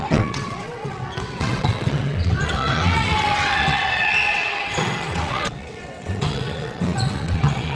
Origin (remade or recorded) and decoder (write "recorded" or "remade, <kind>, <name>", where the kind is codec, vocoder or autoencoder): remade, vocoder, WaveNeXt